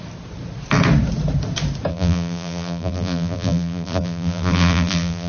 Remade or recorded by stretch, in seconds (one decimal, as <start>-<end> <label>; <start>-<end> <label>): 0.0-1.9 recorded; 1.9-5.3 remade